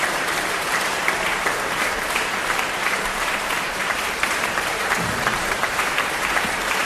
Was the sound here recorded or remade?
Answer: remade